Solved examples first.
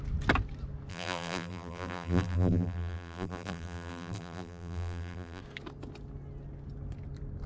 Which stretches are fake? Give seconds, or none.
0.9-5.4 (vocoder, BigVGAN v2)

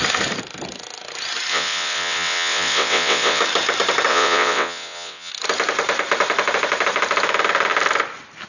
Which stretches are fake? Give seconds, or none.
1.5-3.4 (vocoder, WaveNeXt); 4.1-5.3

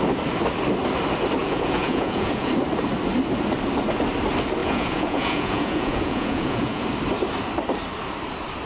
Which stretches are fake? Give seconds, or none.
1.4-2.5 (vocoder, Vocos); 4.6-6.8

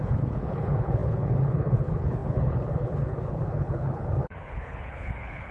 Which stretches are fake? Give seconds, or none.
0.0-5.5 (codec, HILCodec)

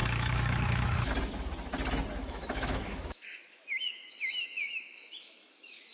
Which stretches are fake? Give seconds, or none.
0.0-1.1 (autoencoder, DAC-VAE); 2.2-5.9

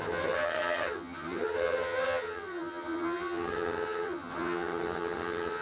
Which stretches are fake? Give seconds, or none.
0.0-5.6 (vocoder, HiFi-GAN)

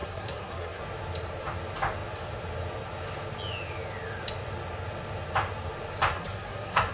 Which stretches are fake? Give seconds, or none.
0.0-0.8 (codec, SNAC); 6.1-6.9